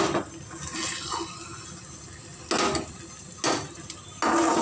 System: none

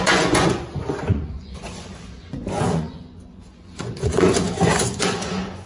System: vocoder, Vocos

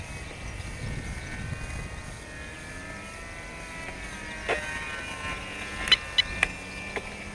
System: none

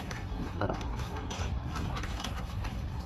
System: codec, SNAC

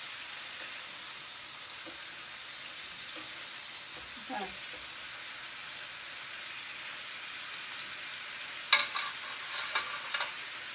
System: none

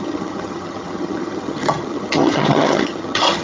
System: vocoder, HiFi-GAN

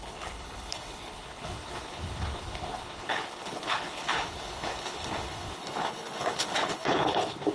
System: codec, HILCodec